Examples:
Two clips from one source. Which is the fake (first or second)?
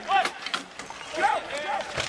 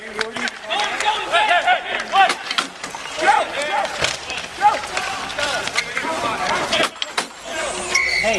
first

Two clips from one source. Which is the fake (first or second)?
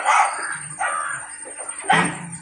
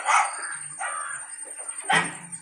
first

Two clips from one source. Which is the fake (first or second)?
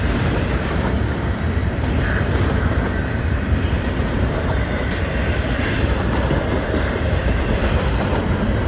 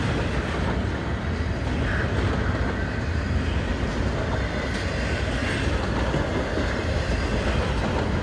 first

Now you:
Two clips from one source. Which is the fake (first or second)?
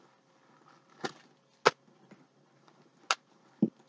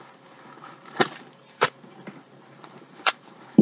second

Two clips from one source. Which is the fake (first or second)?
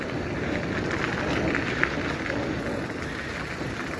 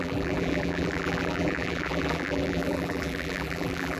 second